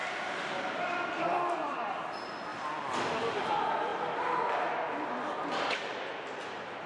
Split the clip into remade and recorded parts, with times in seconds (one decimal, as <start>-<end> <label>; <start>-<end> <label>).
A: 0.0-6.9 recorded